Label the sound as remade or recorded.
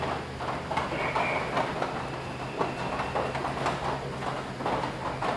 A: recorded